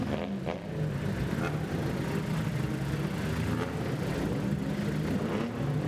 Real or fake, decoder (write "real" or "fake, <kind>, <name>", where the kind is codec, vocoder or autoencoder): real